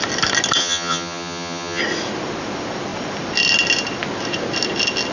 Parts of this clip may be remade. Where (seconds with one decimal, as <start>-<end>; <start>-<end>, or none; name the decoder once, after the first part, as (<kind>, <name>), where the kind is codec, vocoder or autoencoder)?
0.6-1.8 (vocoder, HiFi-GAN)